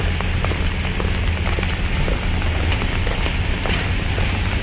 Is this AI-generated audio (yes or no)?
no